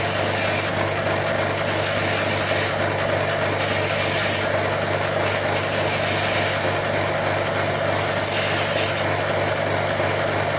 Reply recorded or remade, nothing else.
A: recorded